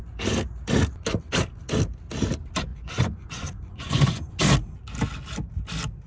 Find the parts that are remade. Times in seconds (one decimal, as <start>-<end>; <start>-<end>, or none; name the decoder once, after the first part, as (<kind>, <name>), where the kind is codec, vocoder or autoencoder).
2.7-4.4 (vocoder, Vocos)